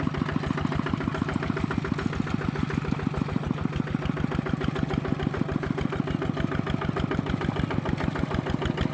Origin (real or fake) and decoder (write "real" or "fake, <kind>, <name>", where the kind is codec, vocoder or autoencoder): real